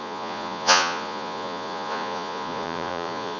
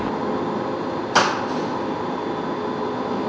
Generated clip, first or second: first